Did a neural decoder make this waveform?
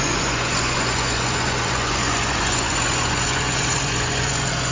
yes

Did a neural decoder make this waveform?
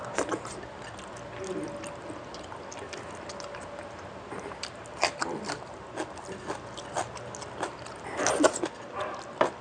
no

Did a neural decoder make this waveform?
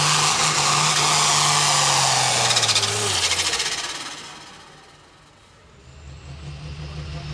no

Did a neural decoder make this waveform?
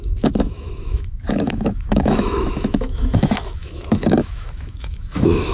yes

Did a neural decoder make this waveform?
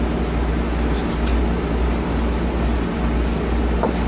no